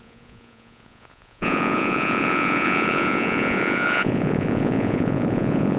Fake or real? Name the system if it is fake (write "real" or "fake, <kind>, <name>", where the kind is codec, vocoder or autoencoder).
fake, vocoder, Vocos